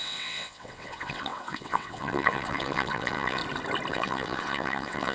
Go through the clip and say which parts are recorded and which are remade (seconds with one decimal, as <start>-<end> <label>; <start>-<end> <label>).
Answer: 0.0-3.4 remade; 3.4-3.9 recorded; 3.9-5.1 remade